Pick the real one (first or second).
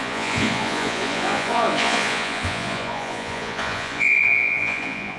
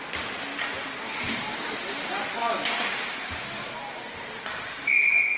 second